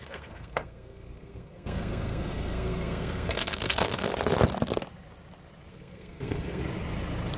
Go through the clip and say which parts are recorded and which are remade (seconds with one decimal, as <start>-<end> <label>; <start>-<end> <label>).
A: 0.0-4.1 remade; 4.1-5.7 recorded; 5.7-6.6 remade; 6.6-7.4 recorded